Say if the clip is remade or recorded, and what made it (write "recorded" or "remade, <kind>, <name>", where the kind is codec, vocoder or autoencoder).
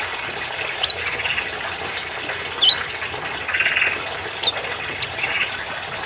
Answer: recorded